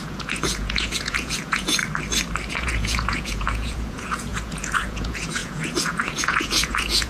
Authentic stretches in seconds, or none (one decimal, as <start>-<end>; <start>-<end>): 1.8-2.5